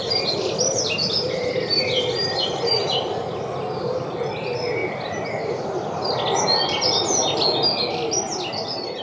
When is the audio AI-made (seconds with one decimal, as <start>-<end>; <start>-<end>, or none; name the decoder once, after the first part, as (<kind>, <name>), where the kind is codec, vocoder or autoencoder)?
none